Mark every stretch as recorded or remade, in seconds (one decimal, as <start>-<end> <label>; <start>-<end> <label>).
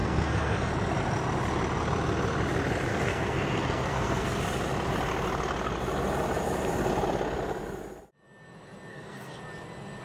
0.0-0.7 remade; 0.7-2.9 recorded; 2.9-4.4 remade; 4.4-8.9 recorded; 8.9-9.4 remade; 9.4-10.0 recorded